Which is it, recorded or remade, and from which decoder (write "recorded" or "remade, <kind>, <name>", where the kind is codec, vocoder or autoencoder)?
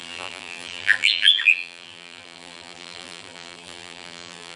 remade, vocoder, BigVGAN v2